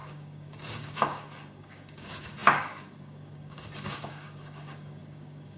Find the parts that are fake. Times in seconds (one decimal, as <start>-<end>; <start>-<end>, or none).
0.0-5.6